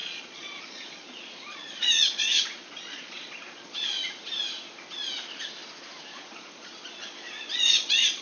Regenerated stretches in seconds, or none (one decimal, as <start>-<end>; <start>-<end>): 0.0-4.0; 6.1-8.2